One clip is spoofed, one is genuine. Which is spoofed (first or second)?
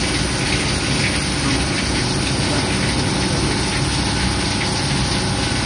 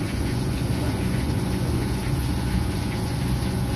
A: second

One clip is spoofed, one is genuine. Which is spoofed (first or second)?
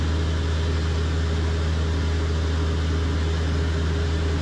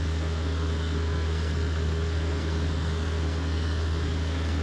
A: second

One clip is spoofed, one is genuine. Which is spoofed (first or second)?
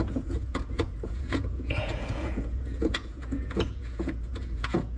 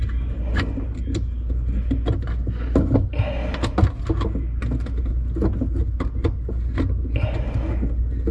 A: first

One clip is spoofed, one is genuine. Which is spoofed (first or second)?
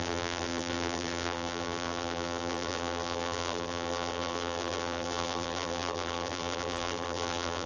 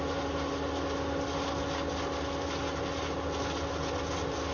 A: first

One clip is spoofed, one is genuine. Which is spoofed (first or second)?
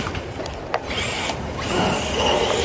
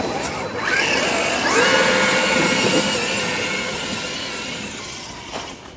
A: first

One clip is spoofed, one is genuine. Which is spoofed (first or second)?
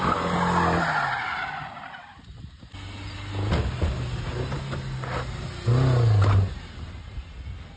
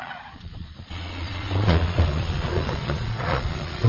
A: second